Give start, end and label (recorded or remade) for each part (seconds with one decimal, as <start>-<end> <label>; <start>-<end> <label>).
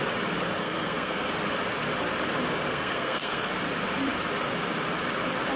0.0-0.6 recorded; 0.6-1.3 remade; 1.3-2.7 recorded; 2.7-3.5 remade; 3.5-5.6 recorded